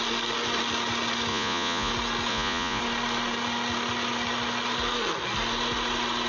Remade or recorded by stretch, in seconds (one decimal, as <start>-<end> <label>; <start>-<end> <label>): 0.0-1.3 recorded; 1.3-1.9 remade; 1.9-2.3 recorded; 2.3-2.8 remade; 2.8-6.3 recorded